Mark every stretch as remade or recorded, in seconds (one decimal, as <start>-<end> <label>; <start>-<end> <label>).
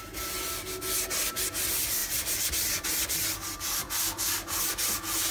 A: 0.0-5.3 recorded